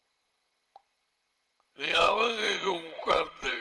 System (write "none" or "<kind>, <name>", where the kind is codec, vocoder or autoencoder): vocoder, Vocos